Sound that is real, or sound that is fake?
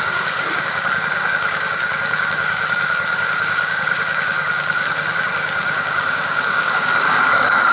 fake